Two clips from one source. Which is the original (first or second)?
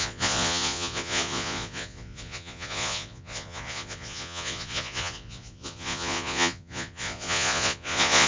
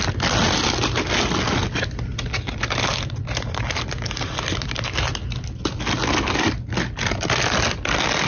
second